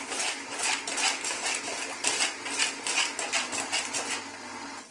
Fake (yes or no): no